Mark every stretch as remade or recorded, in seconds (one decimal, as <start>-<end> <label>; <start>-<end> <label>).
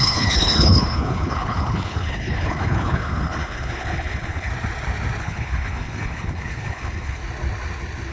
0.0-4.5 remade; 4.5-5.2 recorded; 5.2-7.2 remade; 7.2-8.1 recorded